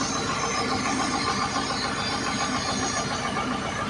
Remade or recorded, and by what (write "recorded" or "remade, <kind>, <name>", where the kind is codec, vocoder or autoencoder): recorded